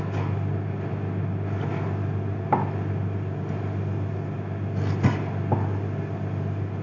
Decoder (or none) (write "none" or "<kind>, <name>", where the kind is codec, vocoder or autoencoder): none